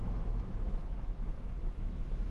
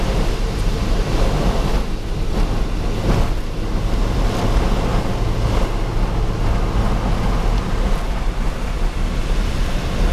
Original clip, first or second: second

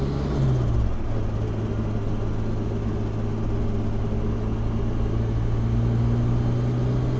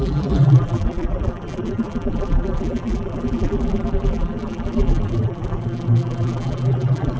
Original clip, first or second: first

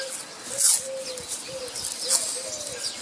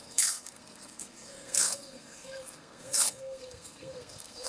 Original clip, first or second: first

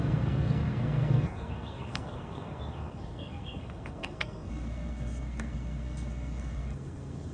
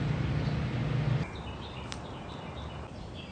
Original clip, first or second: second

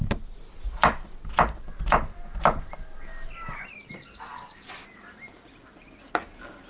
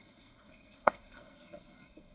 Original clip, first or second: first